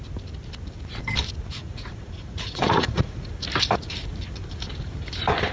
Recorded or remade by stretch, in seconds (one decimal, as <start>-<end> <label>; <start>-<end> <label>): 0.0-1.6 recorded; 1.6-3.3 remade; 3.3-5.5 recorded